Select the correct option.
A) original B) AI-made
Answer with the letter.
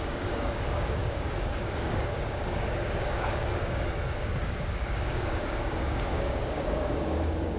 B